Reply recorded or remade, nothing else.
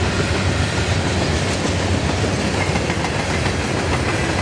recorded